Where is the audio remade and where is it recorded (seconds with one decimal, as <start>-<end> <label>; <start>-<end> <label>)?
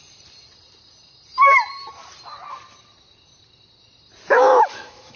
0.0-4.3 recorded; 4.3-5.2 remade